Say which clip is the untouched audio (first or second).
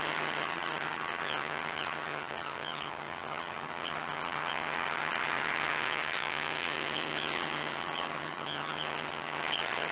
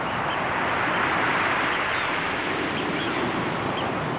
second